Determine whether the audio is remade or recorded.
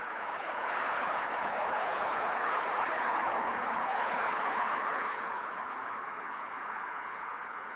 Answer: remade